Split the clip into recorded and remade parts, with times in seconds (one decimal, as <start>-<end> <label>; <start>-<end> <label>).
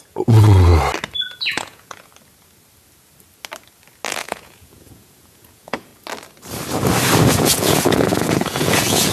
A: 0.0-0.7 remade; 0.7-1.2 recorded; 1.2-2.1 remade; 2.1-4.1 recorded; 4.1-5.9 remade; 5.9-7.3 recorded; 7.3-9.1 remade